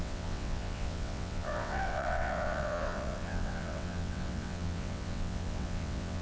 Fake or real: fake